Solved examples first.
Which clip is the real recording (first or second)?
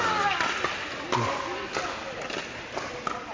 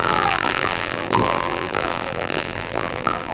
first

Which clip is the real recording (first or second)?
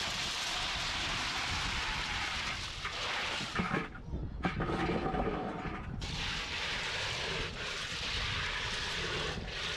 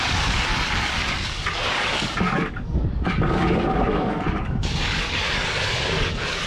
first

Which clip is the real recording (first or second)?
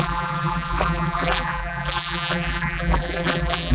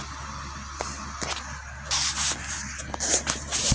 second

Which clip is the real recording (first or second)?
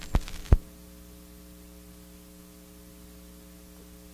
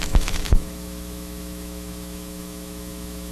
first